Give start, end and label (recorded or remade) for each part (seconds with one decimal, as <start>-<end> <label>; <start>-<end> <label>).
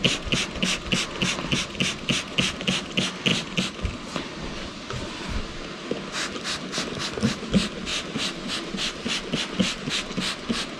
0.0-3.3 recorded; 3.3-5.1 remade; 5.1-7.9 recorded; 7.9-9.4 remade; 9.4-10.8 recorded